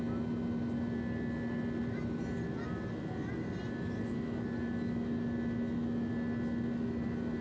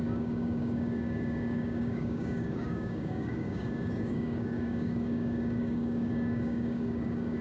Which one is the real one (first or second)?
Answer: first